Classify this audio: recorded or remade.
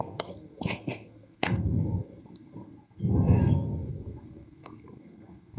remade